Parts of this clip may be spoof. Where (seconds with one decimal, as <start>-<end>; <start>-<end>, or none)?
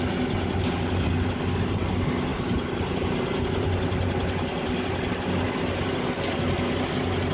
none